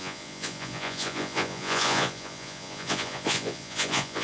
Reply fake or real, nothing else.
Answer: fake